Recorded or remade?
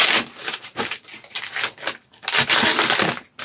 recorded